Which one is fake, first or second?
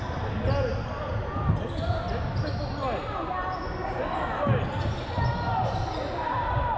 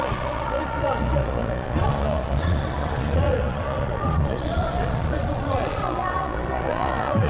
second